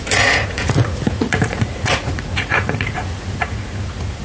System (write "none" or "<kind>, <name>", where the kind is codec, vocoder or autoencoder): vocoder, Vocos